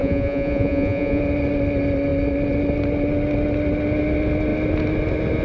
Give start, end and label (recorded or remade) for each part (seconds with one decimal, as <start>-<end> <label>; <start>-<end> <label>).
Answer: 0.0-1.2 remade; 1.2-5.4 recorded